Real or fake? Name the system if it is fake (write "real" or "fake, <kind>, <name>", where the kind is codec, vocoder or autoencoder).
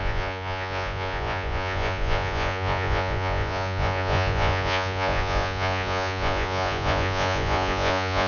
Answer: fake, vocoder, Vocos